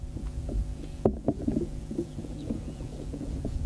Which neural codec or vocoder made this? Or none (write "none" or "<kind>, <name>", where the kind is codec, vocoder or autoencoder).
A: vocoder, Vocos